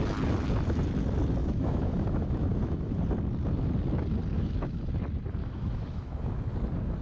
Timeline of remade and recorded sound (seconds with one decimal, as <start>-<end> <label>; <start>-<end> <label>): 0.0-1.4 recorded; 1.4-3.0 remade; 3.0-4.3 recorded; 4.3-4.9 remade; 4.9-5.4 recorded; 5.4-6.4 remade; 6.4-7.0 recorded